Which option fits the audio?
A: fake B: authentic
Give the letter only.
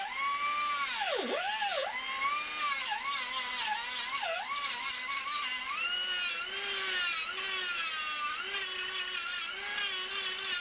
B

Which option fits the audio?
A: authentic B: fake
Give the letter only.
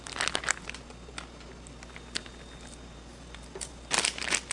A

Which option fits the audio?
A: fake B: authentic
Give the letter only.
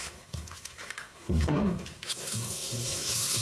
A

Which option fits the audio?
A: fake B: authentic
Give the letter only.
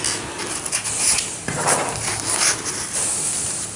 B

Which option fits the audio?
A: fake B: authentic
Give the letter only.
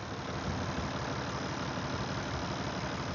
B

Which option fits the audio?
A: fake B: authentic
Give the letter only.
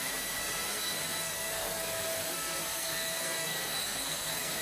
A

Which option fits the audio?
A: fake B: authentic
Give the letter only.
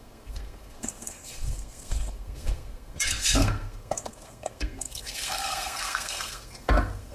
A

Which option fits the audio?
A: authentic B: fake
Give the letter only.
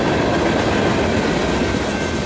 A